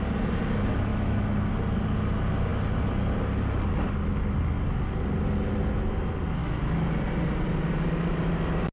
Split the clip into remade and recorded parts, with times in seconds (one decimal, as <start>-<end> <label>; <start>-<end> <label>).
0.0-0.9 recorded; 0.9-1.5 remade; 1.5-6.4 recorded; 6.4-6.9 remade; 6.9-8.7 recorded